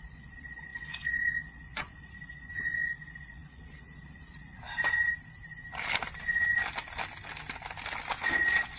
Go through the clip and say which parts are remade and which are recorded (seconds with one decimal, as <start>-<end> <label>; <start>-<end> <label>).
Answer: 0.0-4.6 remade; 4.6-8.1 recorded; 8.1-8.8 remade